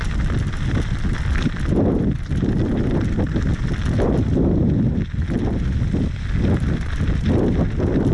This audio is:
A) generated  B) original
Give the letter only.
B